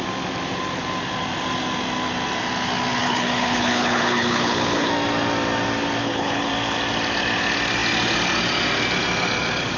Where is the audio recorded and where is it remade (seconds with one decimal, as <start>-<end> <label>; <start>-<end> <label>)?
0.0-3.0 recorded; 3.0-4.9 remade; 4.9-6.0 recorded; 6.0-6.5 remade; 6.5-9.8 recorded